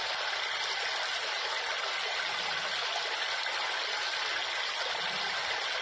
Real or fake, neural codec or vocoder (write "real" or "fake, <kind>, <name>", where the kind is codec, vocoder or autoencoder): real